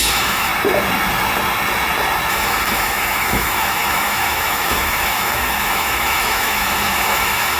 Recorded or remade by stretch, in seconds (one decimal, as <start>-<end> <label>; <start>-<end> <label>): 0.0-0.5 remade; 0.5-2.3 recorded; 2.3-7.6 remade

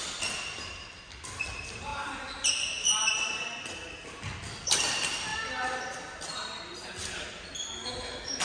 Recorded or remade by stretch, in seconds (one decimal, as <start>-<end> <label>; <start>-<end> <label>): 0.0-8.4 recorded

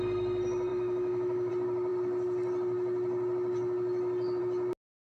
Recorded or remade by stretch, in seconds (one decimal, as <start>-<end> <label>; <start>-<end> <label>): 0.0-0.7 recorded; 0.7-1.5 remade; 1.5-5.0 recorded

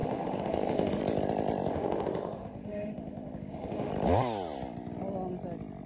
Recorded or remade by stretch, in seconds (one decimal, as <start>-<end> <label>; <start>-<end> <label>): 0.0-1.0 remade; 1.0-1.7 recorded; 1.7-3.9 remade; 3.9-5.9 recorded

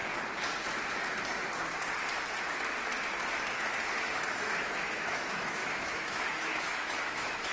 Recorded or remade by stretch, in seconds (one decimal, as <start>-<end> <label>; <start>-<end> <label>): 0.0-3.9 recorded; 3.9-7.5 remade

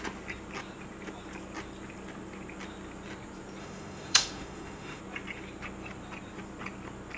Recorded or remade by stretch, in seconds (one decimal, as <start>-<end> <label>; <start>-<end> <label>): 0.0-3.6 recorded; 3.6-5.0 remade; 5.0-7.2 recorded